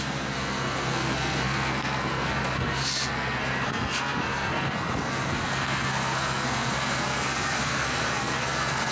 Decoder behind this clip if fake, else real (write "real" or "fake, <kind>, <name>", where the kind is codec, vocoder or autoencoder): fake, codec, SNAC